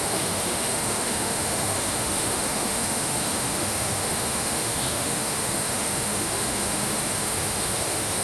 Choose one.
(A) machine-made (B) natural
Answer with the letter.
A